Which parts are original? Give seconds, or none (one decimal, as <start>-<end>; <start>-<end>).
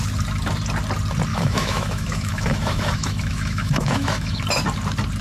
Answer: 0.0-1.3; 4.4-5.2